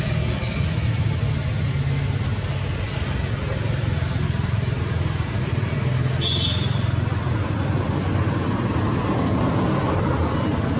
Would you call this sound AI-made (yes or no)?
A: no